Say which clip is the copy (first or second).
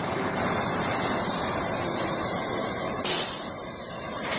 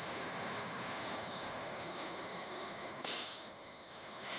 second